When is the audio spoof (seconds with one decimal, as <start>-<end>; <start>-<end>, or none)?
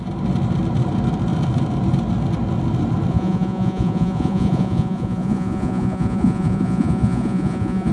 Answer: 3.1-7.9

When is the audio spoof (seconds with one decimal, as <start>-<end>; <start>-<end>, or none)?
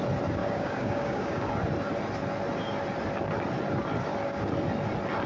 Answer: 0.4-1.5